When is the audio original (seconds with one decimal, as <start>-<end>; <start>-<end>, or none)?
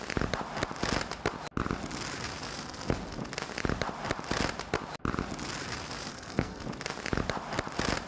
0.0-6.1; 6.6-8.1